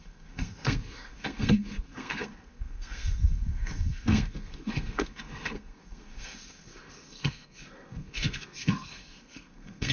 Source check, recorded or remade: remade